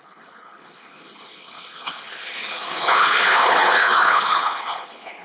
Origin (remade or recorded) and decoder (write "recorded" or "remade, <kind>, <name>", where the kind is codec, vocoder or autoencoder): remade, codec, HILCodec